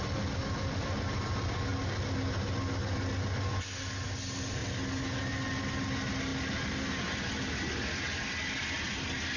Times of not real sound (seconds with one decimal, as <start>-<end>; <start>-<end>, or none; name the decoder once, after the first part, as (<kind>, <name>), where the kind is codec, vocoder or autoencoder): none